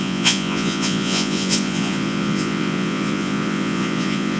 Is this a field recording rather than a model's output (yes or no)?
no